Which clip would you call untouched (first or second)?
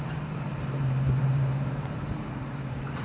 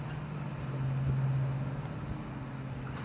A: second